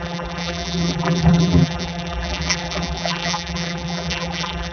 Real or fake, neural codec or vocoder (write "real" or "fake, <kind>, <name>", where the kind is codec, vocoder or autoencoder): fake, vocoder, BigVGAN v2